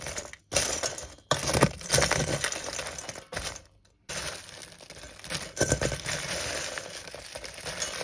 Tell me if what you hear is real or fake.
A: real